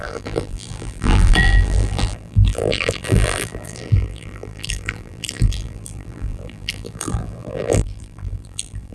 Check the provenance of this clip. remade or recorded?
remade